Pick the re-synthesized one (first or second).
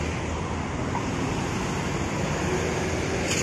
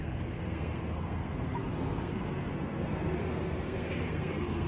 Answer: second